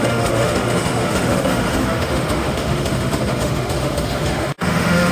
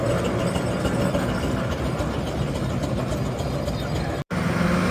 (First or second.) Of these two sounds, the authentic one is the second